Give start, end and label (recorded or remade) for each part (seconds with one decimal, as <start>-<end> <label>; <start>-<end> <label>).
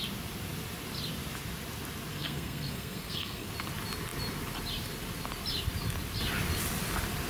0.0-2.1 recorded; 2.1-3.5 remade; 3.5-7.3 recorded